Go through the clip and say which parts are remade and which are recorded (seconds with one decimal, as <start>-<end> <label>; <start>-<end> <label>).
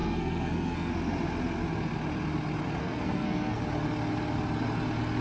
0.0-0.9 remade; 0.9-2.8 recorded; 2.8-3.6 remade; 3.6-5.2 recorded